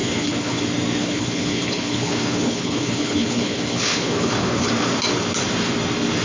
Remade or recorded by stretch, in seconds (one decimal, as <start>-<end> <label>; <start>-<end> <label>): 0.0-0.6 remade; 0.6-1.0 recorded; 1.0-4.7 remade; 4.7-6.2 recorded